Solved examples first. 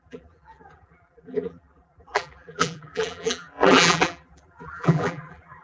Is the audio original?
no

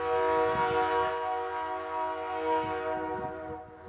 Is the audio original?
yes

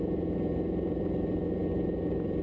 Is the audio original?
no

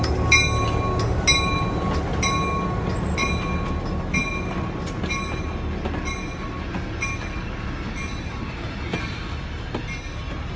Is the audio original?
yes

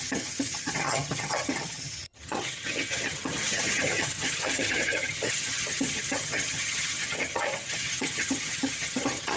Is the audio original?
no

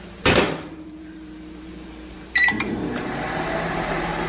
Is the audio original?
no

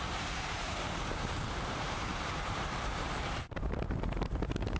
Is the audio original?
no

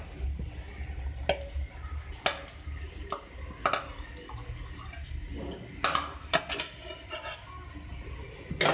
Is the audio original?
yes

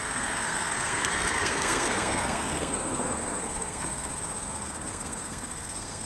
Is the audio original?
no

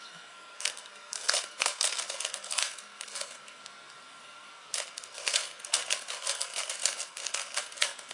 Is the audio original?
no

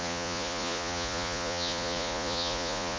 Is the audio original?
no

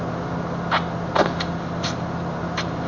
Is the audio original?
yes